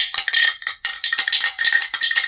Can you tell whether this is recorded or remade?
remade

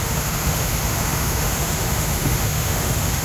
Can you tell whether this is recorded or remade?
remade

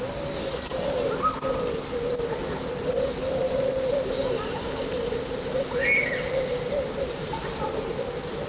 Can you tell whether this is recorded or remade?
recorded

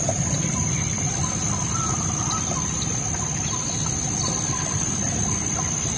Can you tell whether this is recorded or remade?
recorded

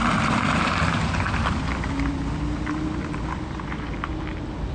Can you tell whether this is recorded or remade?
recorded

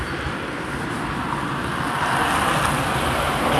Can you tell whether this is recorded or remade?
recorded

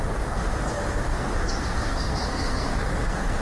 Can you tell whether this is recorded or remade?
remade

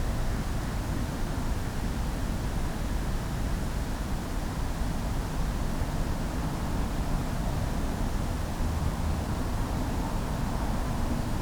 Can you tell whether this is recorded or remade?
recorded